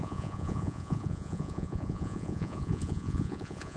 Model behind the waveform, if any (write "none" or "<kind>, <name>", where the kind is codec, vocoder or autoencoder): vocoder, Vocos